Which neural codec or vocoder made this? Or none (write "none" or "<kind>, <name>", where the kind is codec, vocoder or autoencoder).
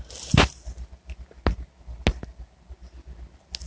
none